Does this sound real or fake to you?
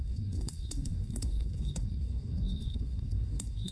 fake